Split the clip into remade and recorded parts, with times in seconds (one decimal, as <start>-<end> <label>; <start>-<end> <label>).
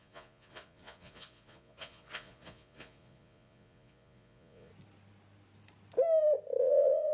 0.0-4.7 remade; 4.7-6.6 recorded; 6.6-7.1 remade